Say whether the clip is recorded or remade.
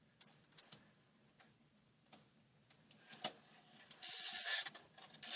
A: remade